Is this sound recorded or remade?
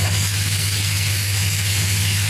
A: remade